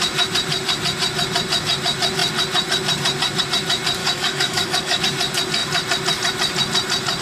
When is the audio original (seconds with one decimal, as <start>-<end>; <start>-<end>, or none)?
0.0-4.0; 5.0-7.2